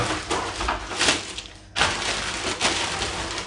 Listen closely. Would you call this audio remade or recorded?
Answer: recorded